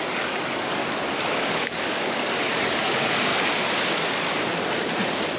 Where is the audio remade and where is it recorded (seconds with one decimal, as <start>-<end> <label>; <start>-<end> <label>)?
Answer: 0.0-0.8 remade; 0.8-1.3 recorded; 1.3-3.3 remade; 3.3-5.4 recorded